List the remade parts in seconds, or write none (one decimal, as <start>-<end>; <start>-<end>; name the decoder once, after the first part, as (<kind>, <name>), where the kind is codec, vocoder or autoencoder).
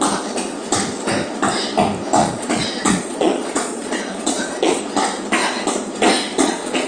2.2-4.8 (vocoder, Vocos); 6.3-6.9